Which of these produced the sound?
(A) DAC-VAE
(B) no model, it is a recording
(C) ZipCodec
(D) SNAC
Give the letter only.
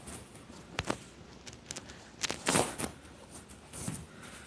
B